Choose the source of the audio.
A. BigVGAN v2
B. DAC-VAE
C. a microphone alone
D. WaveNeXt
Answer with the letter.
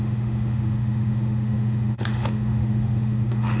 B